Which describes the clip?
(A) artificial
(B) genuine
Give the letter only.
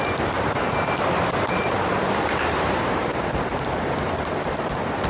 A